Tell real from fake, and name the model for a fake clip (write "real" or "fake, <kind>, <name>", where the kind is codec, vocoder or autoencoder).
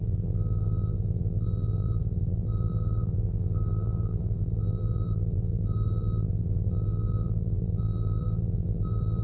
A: fake, vocoder, BigVGAN v2